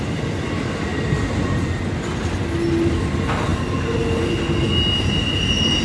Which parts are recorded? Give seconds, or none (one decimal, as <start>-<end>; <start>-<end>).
0.0-5.8